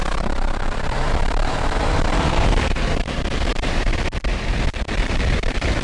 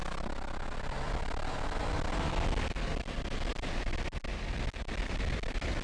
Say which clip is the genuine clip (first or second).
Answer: second